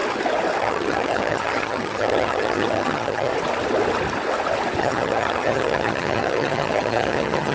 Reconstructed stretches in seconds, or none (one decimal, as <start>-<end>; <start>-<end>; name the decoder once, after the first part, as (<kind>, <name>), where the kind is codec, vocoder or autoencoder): 0.6-3.3 (vocoder, HiFi-GAN); 4.8-7.5